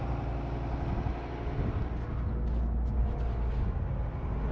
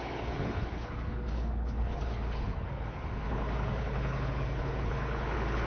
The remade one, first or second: second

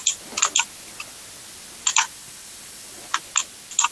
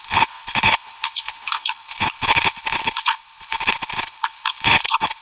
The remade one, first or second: second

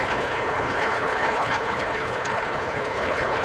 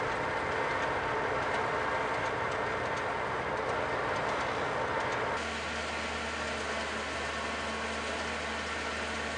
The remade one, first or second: first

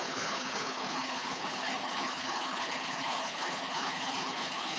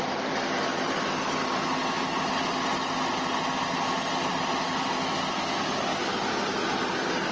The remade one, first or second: first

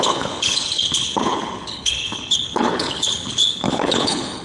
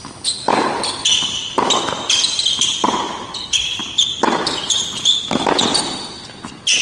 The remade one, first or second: first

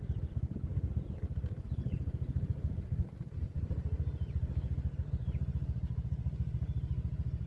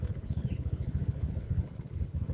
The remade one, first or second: second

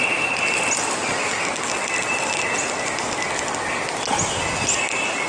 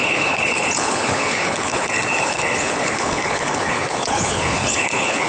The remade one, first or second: second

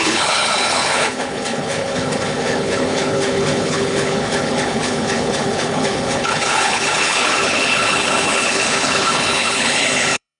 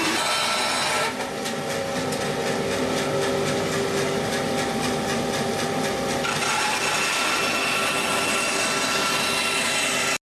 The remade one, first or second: first